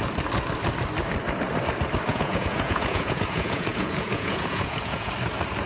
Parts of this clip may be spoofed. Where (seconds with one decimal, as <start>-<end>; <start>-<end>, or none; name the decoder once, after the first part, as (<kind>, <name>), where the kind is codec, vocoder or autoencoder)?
2.1-5.1 (vocoder, Vocos)